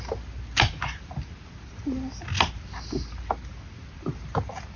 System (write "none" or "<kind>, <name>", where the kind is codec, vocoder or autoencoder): none